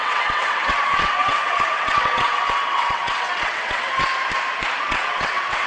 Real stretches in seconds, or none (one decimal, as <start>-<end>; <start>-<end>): 4.1-4.8